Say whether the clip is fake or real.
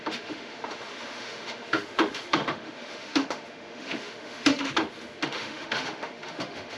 fake